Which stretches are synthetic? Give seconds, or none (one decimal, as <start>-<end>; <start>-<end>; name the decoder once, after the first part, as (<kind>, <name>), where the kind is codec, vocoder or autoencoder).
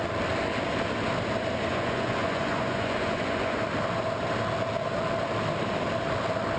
1.7-3.6 (vocoder, Vocos)